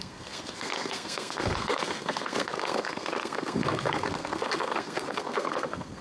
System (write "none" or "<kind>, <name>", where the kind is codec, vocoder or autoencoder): codec, SNAC